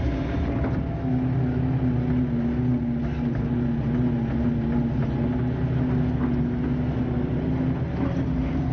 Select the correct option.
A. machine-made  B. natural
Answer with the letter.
B